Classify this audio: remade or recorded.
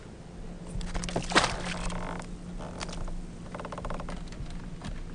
recorded